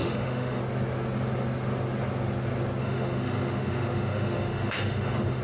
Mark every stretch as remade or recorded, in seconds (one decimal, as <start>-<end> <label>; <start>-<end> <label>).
0.0-0.6 remade; 0.6-2.8 recorded; 2.8-5.4 remade